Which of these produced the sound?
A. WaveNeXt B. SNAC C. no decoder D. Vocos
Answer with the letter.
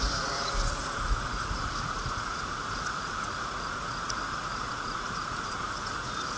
D